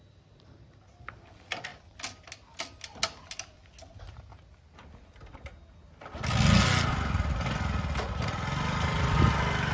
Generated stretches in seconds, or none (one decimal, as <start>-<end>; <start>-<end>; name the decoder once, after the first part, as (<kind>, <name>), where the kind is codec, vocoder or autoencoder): none